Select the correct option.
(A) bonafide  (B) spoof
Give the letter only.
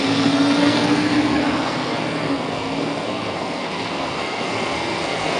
B